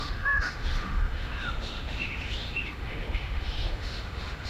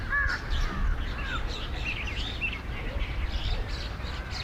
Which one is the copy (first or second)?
first